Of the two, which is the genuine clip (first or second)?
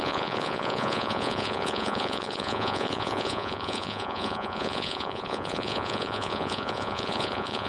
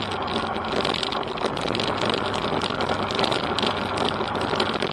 second